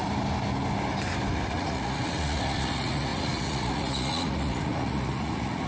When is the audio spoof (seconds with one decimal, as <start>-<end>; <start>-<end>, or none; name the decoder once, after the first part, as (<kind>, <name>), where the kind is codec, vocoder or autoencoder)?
1.3-5.7 (vocoder, Vocos)